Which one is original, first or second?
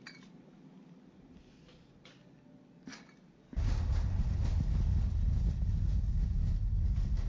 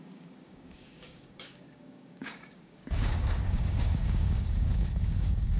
first